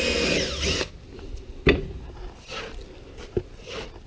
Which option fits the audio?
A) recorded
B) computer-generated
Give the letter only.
A